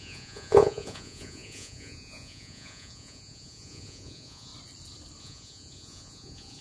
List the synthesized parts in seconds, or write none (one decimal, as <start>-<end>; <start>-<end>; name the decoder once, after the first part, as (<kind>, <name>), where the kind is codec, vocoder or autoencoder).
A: 0.0-4.5 (vocoder, Vocos); 5.2-6.6